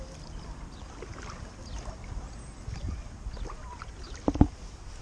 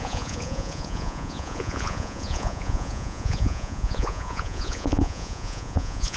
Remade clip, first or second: second